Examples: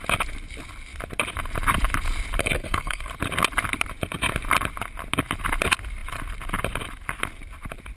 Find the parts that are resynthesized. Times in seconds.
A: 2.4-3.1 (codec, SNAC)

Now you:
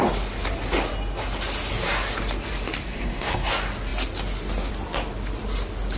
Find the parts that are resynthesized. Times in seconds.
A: 2.9-3.5 (codec, SNAC)

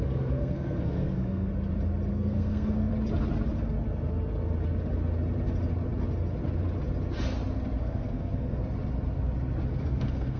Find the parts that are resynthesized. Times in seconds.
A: 0.0-1.5 (codec, SNAC); 2.1-2.9; 7.8-8.6; 9.8-10.4

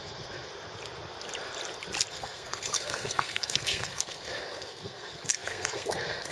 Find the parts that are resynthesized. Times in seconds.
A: 0.0-0.5 (codec, SNAC); 2.1-6.3